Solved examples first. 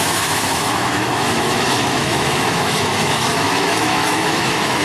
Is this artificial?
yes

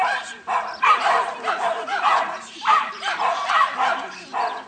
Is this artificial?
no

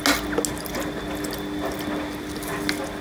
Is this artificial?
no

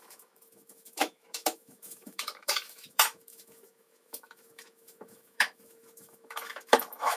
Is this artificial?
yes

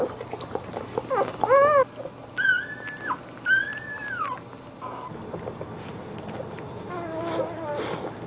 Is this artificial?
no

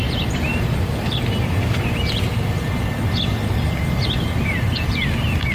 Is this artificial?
no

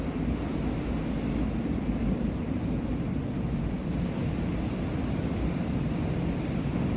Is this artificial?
no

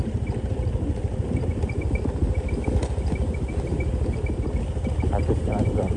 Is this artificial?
no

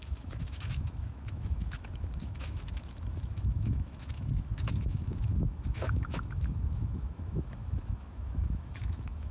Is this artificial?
yes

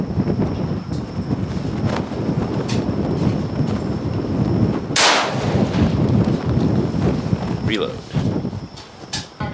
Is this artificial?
no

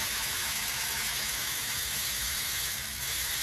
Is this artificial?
yes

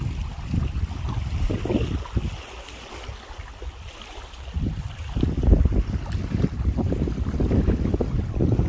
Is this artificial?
no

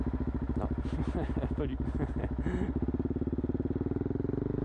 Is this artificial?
no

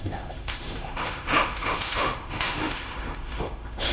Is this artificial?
yes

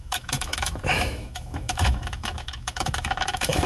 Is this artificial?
yes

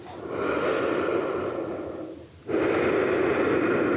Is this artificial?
no